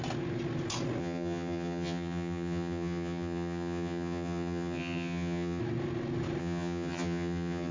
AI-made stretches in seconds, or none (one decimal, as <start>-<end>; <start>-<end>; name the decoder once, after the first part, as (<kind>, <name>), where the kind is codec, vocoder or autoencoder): 1.0-5.6 (vocoder, HiFi-GAN); 6.4-7.7